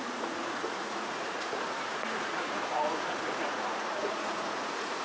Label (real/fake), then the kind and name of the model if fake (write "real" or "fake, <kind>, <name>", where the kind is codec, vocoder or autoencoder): fake, vocoder, Vocos